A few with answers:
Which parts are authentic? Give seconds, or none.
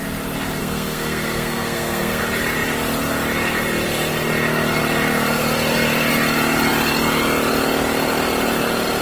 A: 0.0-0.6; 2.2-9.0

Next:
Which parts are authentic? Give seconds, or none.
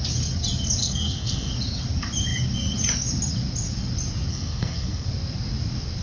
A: 0.0-0.8; 1.5-4.3; 5.1-6.0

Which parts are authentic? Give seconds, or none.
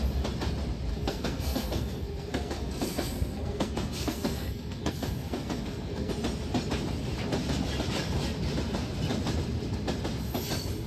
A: 0.0-0.9; 6.1-10.9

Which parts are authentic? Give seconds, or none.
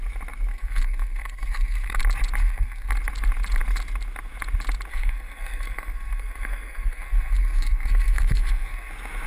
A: 0.0-0.5; 2.0-2.4; 2.9-4.9; 8.9-9.3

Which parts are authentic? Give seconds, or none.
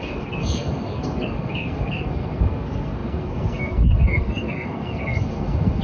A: none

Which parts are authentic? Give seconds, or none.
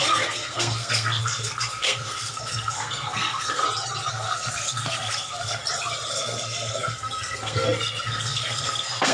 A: 3.6-4.1; 5.6-6.1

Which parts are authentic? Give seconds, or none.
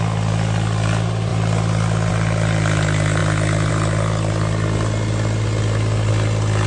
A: 0.0-6.7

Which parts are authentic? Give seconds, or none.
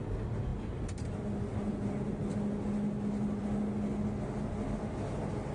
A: 0.0-5.5